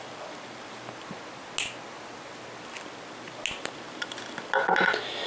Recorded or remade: recorded